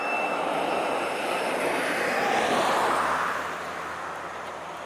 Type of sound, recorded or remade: recorded